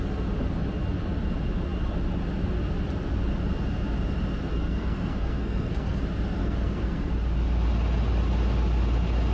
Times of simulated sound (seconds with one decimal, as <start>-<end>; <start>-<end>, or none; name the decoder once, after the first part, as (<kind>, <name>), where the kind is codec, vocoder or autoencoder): 4.5-6.0 (codec, SNAC); 6.4-7.1